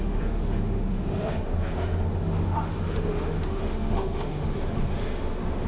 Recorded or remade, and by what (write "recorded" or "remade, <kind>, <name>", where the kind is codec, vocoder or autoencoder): remade, autoencoder, DAC-VAE